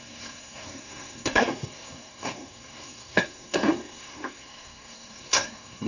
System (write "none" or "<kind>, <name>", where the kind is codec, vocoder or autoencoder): codec, SNAC